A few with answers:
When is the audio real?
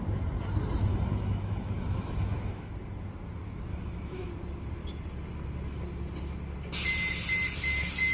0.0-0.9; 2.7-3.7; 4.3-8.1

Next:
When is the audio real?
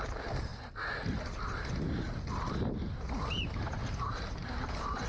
0.0-5.1